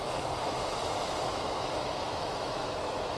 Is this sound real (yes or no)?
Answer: no